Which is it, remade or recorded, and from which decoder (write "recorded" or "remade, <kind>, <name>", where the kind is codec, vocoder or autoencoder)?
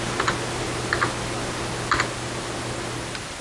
recorded